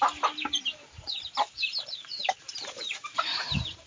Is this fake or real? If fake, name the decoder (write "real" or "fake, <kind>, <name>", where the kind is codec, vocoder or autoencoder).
fake, vocoder, BigVGAN v2